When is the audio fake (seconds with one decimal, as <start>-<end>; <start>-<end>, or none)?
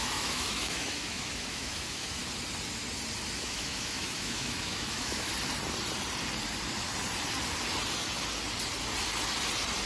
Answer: 0.0-2.2; 3.4-5.3